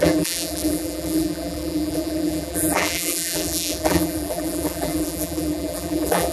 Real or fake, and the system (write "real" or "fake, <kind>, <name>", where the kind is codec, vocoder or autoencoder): fake, vocoder, BigVGAN v2